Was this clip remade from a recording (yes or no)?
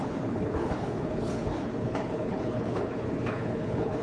yes